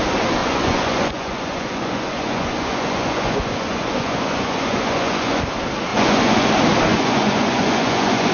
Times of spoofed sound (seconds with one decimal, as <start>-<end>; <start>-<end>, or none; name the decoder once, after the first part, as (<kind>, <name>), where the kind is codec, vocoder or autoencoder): 0.4-5.4 (vocoder, Vocos); 5.9-6.5; 6.9-8.3